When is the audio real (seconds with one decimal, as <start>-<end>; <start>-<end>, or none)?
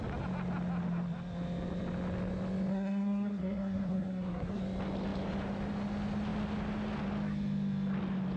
0.0-2.7; 4.6-8.4